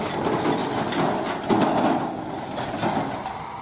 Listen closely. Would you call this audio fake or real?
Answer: real